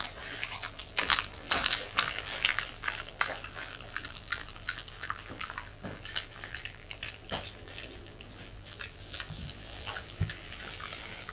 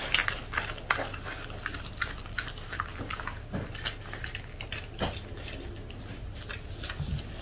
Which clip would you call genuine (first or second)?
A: second